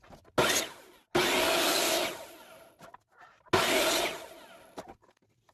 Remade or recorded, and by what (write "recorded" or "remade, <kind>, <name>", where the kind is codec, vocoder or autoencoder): recorded